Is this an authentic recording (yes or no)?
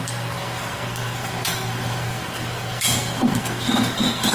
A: no